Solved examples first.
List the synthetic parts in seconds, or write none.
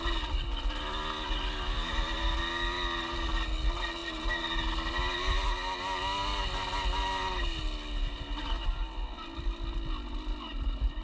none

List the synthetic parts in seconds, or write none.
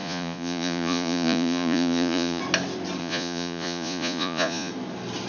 0.0-2.4 (vocoder, Vocos); 3.0-4.7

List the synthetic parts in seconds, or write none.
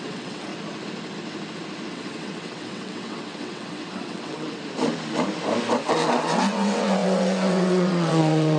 0.0-0.5 (vocoder, WaveNeXt); 1.9-4.6; 5.8-8.6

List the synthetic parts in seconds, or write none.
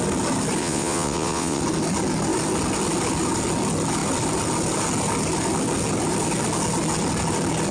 0.6-1.6 (vocoder, WaveNeXt)